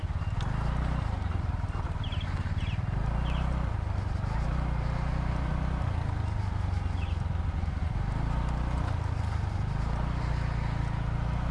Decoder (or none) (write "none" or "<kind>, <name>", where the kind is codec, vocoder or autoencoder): none